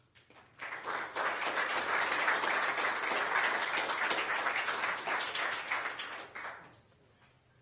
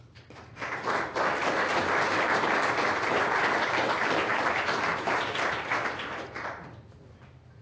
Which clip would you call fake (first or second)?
second